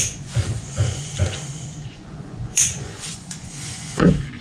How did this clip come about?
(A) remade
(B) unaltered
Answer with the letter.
A